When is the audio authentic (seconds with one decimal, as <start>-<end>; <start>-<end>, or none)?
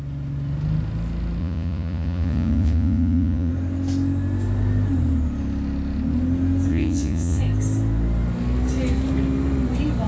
0.0-1.4; 3.5-6.7; 7.4-10.1